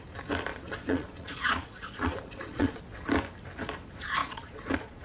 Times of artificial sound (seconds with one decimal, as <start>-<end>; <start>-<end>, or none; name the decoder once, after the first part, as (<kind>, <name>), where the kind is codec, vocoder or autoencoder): 0.5-2.8 (vocoder, Vocos); 4.2-5.0